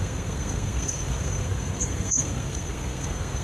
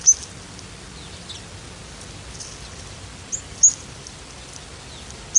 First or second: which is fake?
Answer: first